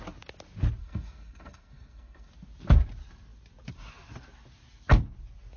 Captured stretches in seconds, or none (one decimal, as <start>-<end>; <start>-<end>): 0.0-0.8; 2.3-5.6